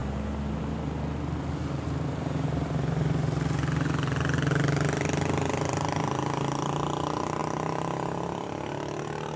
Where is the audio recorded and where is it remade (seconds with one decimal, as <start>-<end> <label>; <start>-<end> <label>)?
0.0-9.4 recorded